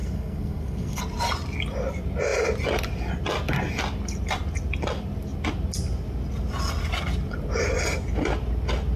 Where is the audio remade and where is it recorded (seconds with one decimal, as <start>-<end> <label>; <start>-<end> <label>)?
0.0-1.0 remade; 1.0-9.0 recorded